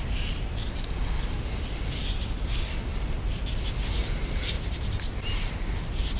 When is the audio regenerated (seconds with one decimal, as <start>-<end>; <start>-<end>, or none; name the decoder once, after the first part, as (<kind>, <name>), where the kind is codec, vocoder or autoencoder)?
4.0-6.2 (vocoder, BigVGAN v2)